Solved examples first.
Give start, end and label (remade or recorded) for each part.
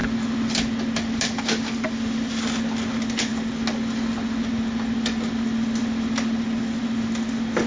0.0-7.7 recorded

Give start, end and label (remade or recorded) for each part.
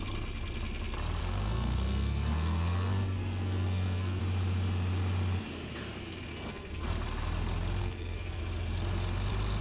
0.0-1.2 recorded; 1.2-4.2 remade; 4.2-6.3 recorded; 6.3-6.9 remade; 6.9-7.8 recorded; 7.8-8.4 remade; 8.4-9.6 recorded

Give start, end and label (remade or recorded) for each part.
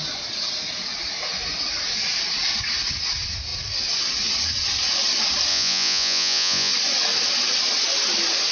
0.0-5.5 recorded; 5.5-6.7 remade; 6.7-8.5 recorded